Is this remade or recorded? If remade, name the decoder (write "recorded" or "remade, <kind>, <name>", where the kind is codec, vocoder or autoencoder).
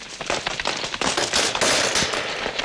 recorded